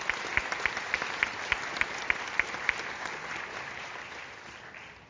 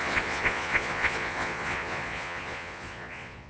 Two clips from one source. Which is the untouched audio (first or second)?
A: first